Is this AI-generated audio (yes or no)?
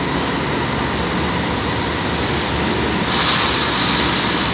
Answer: no